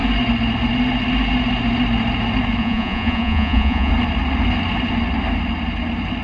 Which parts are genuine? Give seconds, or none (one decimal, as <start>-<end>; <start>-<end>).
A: 0.0-2.6; 3.9-6.2